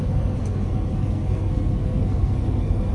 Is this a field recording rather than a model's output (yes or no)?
no